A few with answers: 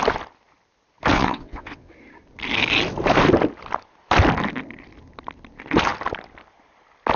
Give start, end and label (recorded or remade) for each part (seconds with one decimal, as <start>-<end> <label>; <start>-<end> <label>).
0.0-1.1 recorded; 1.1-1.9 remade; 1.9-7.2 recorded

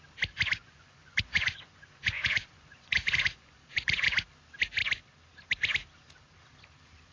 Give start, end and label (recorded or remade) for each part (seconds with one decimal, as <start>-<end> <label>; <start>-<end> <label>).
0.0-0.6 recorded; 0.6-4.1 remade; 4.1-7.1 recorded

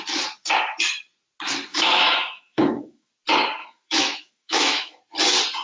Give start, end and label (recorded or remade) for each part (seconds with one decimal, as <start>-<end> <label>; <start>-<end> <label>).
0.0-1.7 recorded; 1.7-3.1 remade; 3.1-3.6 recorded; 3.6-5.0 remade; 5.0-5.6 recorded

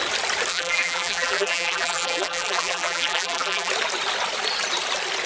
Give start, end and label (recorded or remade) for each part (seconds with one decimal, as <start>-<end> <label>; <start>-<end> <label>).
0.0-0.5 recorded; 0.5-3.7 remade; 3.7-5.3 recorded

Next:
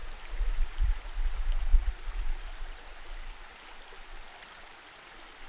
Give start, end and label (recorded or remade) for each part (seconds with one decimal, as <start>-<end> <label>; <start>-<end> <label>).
0.0-5.5 recorded

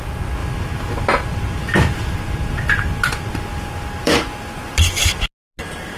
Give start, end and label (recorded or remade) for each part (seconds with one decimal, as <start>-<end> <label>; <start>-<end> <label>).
0.0-4.0 recorded; 4.0-4.8 remade; 4.8-6.0 recorded